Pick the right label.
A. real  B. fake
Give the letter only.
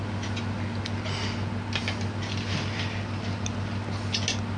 A